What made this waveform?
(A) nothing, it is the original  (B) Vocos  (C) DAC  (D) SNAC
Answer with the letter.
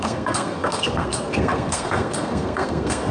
D